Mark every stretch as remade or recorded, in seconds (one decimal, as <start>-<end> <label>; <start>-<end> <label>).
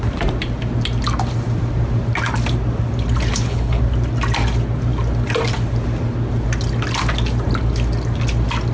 0.0-3.3 recorded; 3.3-3.8 remade; 3.8-8.7 recorded